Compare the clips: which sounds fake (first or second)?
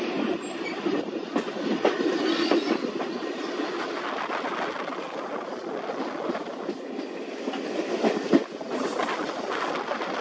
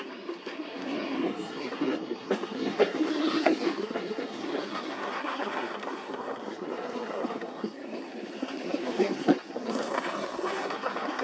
second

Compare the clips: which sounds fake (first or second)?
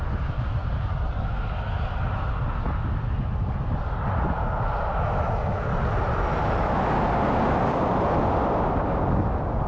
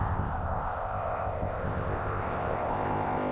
second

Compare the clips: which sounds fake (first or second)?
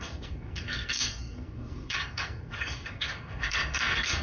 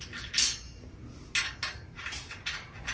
first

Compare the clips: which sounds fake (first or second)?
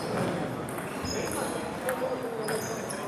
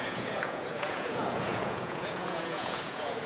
second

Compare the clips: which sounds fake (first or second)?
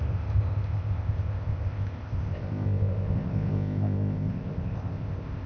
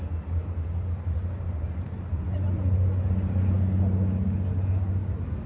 first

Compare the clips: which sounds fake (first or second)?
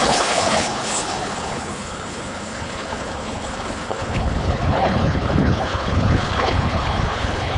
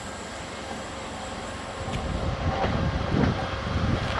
first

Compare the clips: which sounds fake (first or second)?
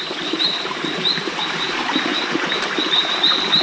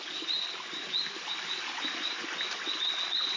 first